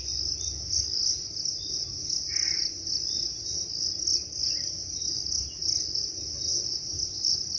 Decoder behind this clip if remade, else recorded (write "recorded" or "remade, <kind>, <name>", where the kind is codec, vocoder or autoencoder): recorded